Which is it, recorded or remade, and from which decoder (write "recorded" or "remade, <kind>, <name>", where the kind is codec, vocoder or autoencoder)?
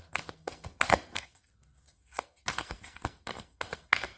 remade, codec, SNAC